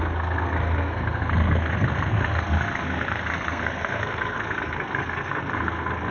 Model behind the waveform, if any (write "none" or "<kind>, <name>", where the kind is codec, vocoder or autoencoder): codec, SNAC